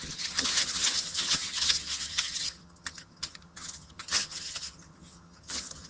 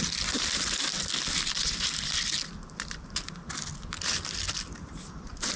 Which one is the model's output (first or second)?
first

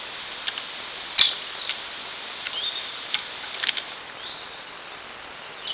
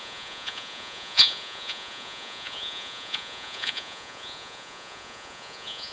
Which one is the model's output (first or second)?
second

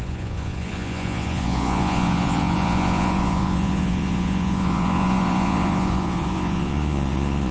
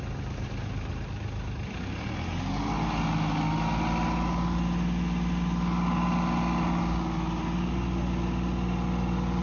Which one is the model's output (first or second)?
first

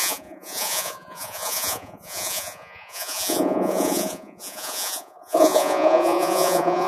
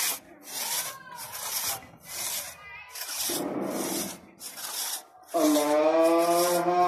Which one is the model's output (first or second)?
first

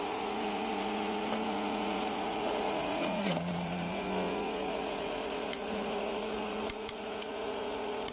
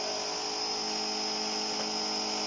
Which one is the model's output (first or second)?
first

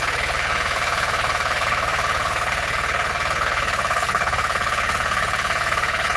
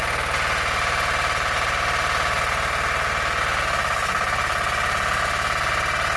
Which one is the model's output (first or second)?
first